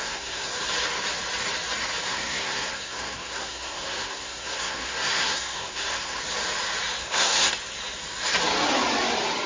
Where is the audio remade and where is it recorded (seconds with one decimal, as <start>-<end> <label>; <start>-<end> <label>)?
0.0-0.5 remade; 0.5-2.1 recorded; 2.1-6.2 remade; 6.2-7.0 recorded; 7.0-7.5 remade; 7.5-9.5 recorded